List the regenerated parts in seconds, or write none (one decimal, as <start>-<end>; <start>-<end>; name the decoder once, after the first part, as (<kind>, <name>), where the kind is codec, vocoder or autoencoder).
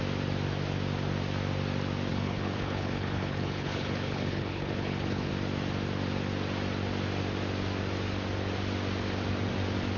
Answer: 2.1-5.3 (codec, HILCodec)